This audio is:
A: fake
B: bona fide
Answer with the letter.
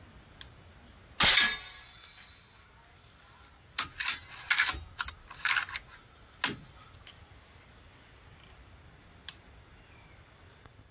B